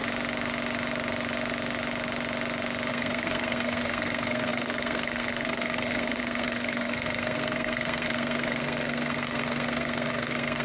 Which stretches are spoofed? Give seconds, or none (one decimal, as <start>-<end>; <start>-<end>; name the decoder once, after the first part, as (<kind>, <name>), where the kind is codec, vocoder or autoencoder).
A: 2.9-10.6 (codec, SNAC)